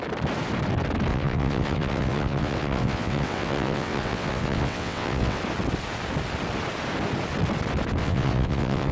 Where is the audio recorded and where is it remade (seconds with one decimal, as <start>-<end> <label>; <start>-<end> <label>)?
0.0-1.1 recorded; 1.1-5.4 remade; 5.4-8.0 recorded; 8.0-8.9 remade